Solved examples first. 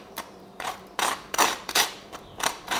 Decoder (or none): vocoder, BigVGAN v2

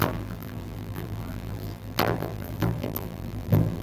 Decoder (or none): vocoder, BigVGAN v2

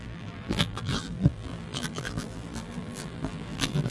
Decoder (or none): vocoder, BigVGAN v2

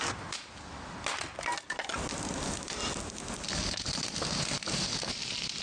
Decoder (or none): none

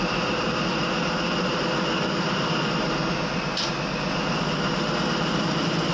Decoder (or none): none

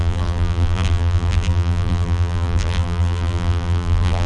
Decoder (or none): vocoder, BigVGAN v2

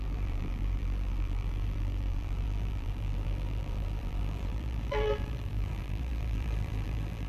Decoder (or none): vocoder, BigVGAN v2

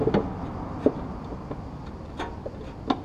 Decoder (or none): none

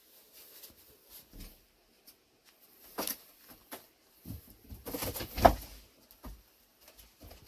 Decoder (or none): none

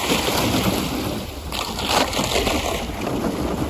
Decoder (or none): none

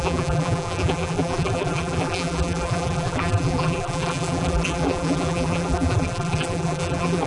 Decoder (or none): vocoder, BigVGAN v2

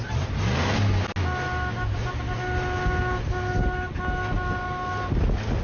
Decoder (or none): none